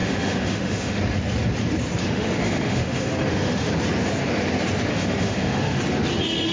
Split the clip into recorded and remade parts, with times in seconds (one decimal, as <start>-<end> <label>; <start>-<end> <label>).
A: 0.0-1.0 remade; 1.0-2.0 recorded; 2.0-3.7 remade; 3.7-4.9 recorded; 4.9-5.8 remade; 5.8-6.5 recorded